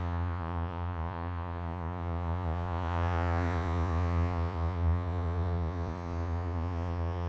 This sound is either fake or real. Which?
fake